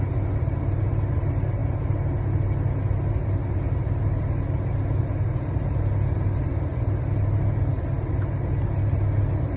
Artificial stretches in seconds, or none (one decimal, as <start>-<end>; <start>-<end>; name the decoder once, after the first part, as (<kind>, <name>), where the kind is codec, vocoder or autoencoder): none